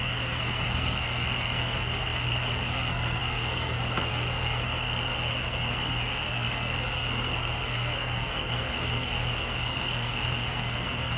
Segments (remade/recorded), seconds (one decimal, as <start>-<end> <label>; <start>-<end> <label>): 0.0-11.2 remade